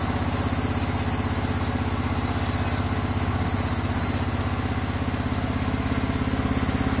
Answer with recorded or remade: recorded